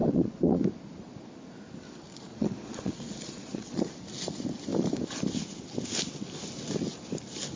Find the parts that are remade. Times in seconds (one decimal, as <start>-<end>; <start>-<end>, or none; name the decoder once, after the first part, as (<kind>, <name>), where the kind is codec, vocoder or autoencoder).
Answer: 0.0-0.6 (vocoder, Vocos); 2.3-3.9